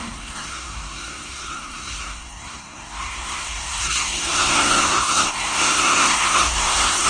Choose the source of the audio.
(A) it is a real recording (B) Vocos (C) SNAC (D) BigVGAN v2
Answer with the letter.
C